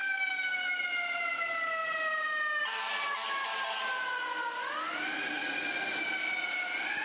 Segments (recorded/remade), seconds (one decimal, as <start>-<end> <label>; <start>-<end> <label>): 0.0-0.7 remade; 0.7-7.0 recorded